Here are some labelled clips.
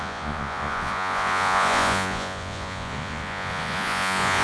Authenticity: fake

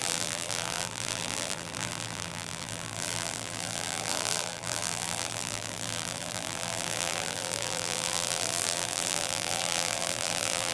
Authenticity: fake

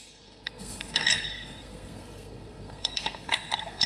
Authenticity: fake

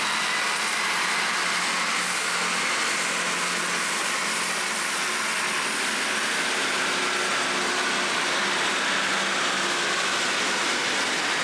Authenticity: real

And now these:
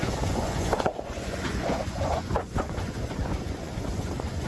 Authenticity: fake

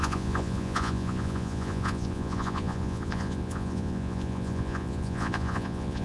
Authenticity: fake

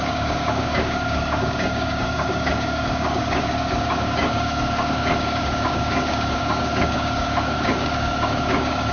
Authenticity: fake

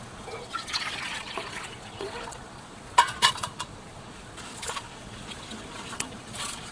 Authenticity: fake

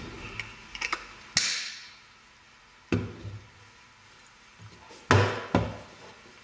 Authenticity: real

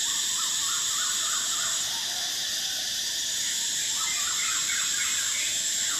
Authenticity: fake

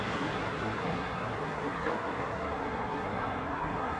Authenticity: fake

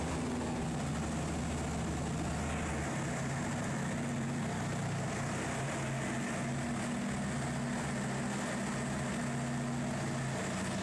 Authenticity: real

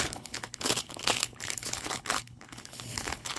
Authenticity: fake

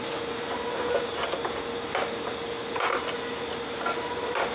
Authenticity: real